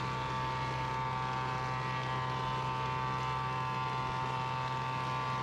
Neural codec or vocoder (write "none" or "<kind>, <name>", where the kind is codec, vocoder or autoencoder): none